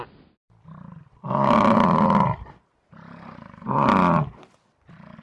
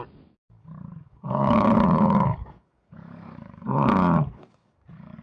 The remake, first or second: second